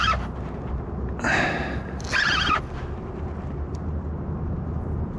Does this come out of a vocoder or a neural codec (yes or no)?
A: no